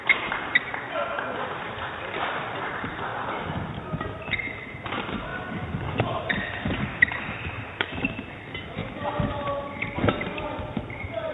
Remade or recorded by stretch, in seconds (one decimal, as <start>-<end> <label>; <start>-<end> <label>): 0.0-8.8 remade; 8.8-10.6 recorded; 10.6-11.3 remade